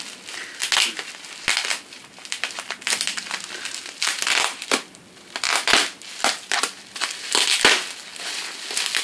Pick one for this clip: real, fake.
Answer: real